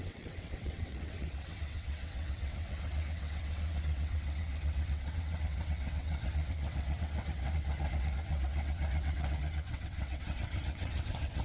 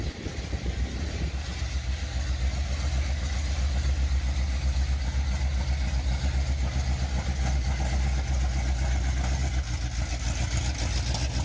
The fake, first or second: first